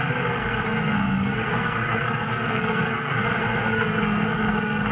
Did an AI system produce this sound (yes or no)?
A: yes